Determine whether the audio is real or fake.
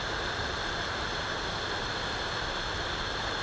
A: real